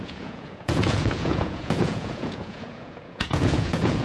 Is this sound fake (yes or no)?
yes